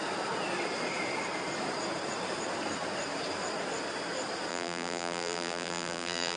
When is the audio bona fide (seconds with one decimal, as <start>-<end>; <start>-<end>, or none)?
0.0-4.5